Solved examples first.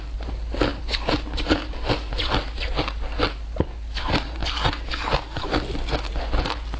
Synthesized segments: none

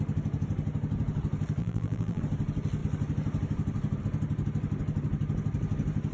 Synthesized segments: 1.6-2.2 (vocoder, BigVGAN v2)

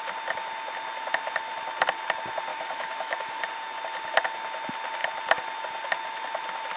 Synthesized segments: 2.5-3.4 (autoencoder, DAC-VAE)

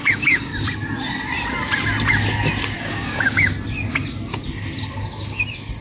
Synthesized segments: 0.0-0.5 (codec, DAC); 2.8-3.5

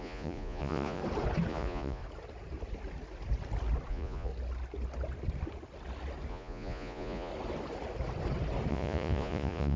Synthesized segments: 0.0-1.0 (vocoder, Vocos); 1.5-2.0; 3.9-4.3; 6.3-7.3; 8.7-9.8

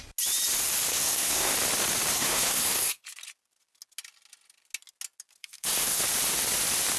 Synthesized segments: 0.9-1.5 (codec, SNAC); 2.1-3.0; 5.4-6.0

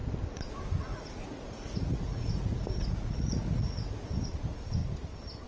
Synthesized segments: 0.9-4.2 (vocoder, Vocos)

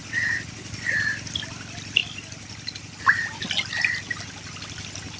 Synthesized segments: none